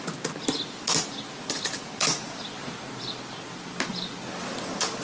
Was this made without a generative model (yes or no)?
yes